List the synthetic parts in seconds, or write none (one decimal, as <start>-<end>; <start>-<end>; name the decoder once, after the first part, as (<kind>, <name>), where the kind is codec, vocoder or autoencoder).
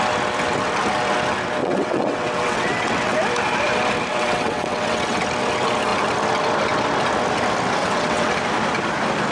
1.6-3.1 (vocoder, WaveNeXt); 4.1-5.2; 7.8-8.3